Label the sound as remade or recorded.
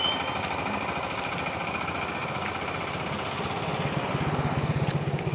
recorded